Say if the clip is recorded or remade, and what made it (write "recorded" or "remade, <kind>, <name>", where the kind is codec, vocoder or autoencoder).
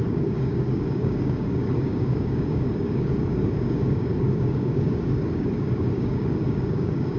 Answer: remade, codec, DAC